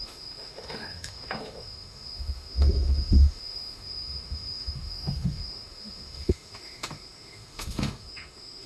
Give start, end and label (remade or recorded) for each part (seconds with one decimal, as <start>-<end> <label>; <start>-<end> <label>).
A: 0.0-8.7 remade